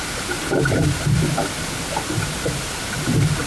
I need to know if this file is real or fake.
real